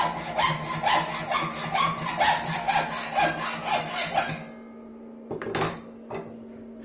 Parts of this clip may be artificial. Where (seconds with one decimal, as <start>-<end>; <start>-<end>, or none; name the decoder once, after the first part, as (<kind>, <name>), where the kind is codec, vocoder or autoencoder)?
none